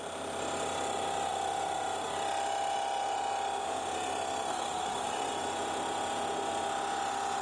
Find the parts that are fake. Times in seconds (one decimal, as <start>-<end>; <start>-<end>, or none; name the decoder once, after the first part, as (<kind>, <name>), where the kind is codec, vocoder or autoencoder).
4.5-5.3 (codec, SNAC)